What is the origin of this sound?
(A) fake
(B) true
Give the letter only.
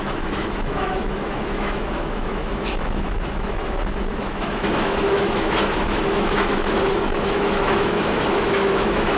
A